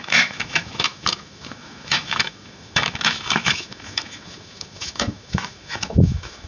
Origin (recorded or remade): remade